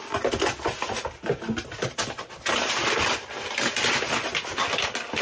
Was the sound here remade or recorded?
recorded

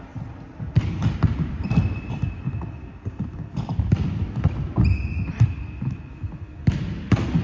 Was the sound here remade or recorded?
recorded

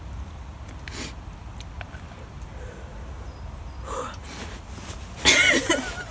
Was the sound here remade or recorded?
recorded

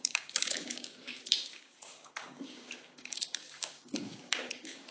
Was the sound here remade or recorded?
remade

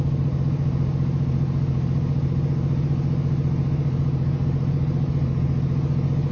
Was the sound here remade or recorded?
recorded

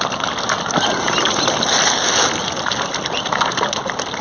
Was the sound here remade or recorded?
recorded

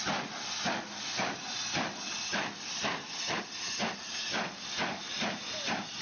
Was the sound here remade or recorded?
recorded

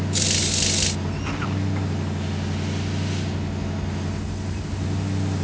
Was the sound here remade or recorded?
recorded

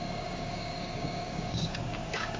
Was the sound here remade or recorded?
remade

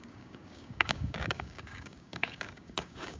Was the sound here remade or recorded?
remade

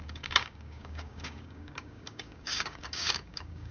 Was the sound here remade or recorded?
remade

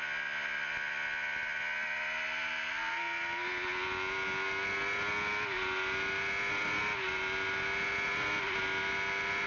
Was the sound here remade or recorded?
recorded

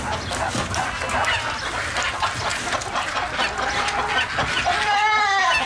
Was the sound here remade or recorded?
recorded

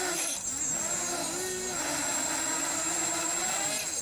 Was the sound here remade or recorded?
recorded